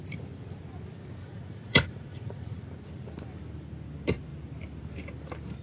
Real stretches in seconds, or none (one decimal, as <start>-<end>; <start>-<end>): 0.0-1.2; 2.6-5.6